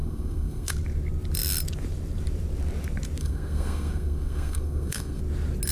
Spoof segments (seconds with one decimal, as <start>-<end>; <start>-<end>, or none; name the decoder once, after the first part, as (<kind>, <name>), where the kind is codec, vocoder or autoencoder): 0.0-0.7 (codec, SNAC); 3.2-5.2